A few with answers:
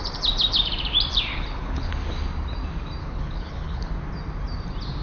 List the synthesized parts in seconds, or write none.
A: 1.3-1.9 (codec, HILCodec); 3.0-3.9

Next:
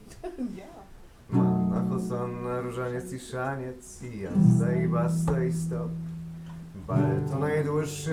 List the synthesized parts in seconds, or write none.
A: 0.0-0.8 (autoencoder, DAC-VAE)

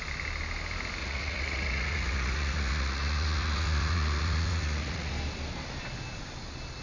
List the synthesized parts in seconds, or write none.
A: 1.0-5.1 (vocoder, Vocos)

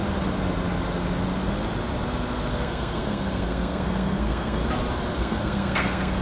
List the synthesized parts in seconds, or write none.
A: 2.5-4.6 (codec, SNAC); 5.2-6.2